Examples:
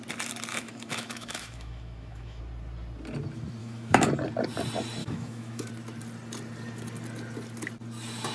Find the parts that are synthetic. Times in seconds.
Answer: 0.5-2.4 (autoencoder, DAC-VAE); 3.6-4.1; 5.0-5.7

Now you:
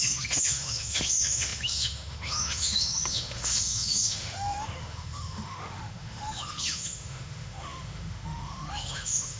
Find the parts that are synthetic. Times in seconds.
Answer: 0.0-9.4 (autoencoder, DAC-VAE)

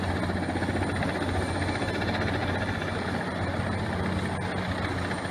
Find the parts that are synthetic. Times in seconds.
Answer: none

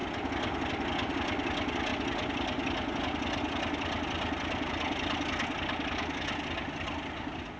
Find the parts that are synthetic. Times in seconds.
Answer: none

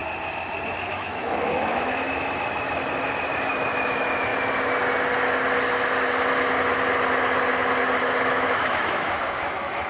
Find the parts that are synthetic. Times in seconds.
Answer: 0.9-2.8 (autoencoder, DAC-VAE); 3.5-4.3; 8.0-9.9

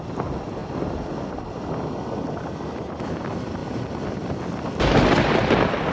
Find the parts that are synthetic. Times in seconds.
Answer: none

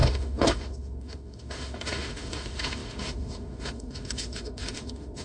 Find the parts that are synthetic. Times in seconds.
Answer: 0.0-5.2 (autoencoder, DAC-VAE)

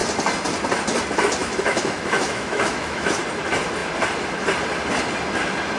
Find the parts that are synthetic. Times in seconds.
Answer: 1.4-3.2 (autoencoder, DAC-VAE)